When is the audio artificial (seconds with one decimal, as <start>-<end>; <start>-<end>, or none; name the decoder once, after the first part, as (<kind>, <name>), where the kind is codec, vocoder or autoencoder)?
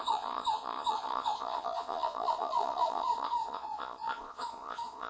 0.0-5.1 (vocoder, Vocos)